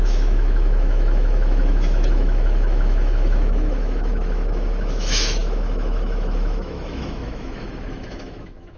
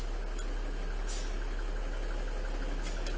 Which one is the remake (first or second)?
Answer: first